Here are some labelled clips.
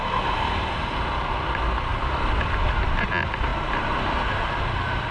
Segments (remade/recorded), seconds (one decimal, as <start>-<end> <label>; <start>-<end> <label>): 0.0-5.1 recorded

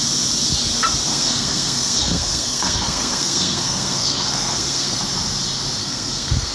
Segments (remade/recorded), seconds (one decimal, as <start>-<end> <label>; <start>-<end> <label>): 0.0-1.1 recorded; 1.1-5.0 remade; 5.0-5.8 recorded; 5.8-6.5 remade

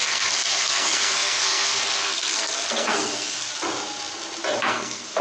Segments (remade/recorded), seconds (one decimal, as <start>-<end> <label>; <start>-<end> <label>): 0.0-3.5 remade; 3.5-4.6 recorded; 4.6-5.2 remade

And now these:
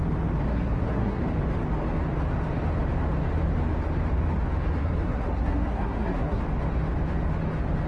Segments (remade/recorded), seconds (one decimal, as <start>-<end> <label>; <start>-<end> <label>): 0.0-0.5 recorded; 0.5-1.2 remade; 1.2-4.8 recorded; 4.8-6.4 remade; 6.4-7.9 recorded

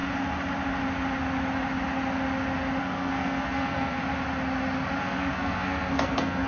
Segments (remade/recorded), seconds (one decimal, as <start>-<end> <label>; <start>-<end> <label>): 0.0-2.8 recorded; 2.8-4.0 remade; 4.0-5.0 recorded; 5.0-6.5 remade